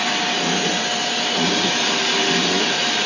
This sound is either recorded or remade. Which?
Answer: recorded